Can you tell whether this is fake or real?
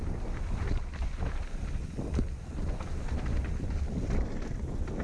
real